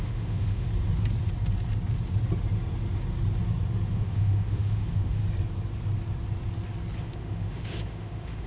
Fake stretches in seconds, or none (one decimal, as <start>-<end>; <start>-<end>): 0.0-0.7; 3.9-5.2; 7.0-8.5